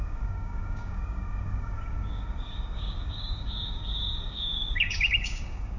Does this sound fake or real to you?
fake